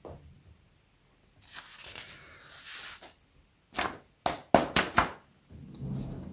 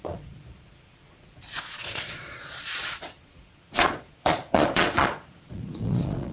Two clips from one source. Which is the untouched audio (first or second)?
first